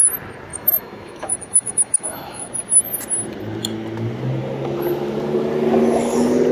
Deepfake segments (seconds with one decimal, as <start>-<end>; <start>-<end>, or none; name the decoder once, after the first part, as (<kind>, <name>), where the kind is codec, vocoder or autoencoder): 0.5-2.5 (autoencoder, DAC-VAE)